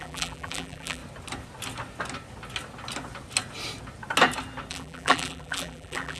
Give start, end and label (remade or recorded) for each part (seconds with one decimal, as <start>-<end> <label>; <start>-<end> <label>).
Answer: 0.0-1.0 remade; 1.0-4.7 recorded; 4.7-6.2 remade